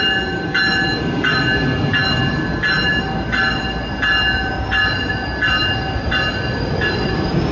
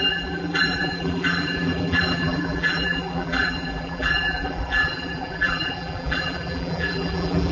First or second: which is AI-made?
second